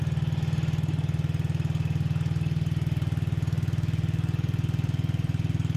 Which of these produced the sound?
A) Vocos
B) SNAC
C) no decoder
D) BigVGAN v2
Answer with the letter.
C